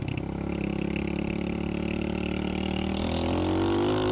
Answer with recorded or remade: recorded